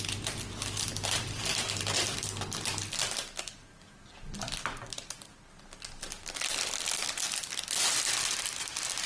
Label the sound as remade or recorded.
recorded